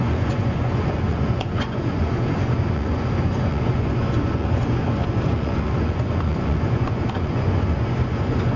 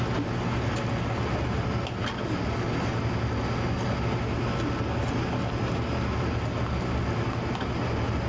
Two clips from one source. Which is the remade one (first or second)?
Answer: first